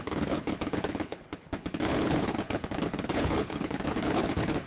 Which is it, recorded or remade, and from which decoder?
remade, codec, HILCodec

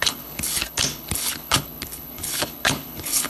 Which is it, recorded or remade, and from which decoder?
remade, codec, HILCodec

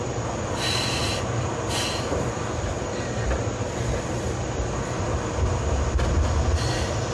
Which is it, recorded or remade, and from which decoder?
recorded